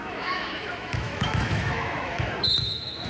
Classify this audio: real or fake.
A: fake